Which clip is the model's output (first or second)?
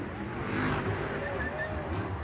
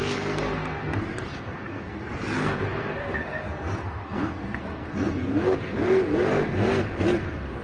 second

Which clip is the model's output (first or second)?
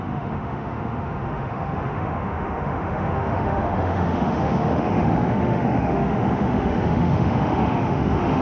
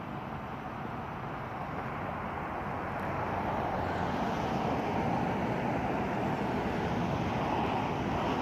first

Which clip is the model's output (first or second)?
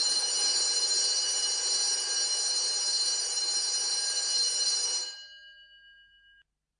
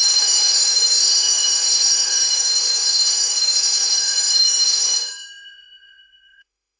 second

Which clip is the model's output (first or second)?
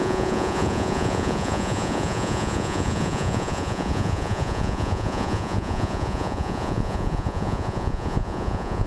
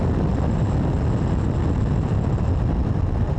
first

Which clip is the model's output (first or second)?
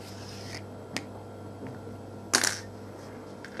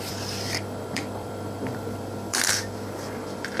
second